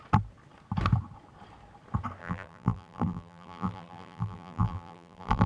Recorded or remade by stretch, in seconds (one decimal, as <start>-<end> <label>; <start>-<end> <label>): 0.0-2.2 recorded; 2.2-5.5 remade